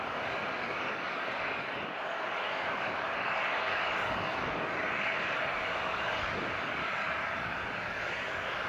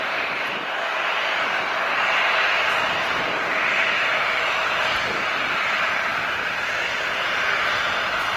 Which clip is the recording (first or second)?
second